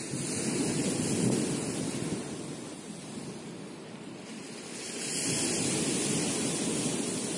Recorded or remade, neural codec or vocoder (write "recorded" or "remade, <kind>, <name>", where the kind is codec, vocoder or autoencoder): recorded